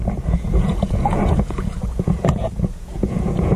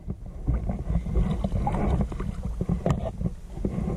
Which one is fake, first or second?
first